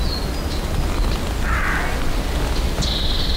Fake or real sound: real